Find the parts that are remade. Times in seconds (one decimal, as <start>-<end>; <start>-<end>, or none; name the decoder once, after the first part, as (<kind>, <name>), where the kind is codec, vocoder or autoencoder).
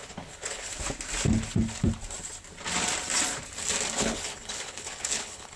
0.0-0.7 (codec, HILCodec); 4.0-5.6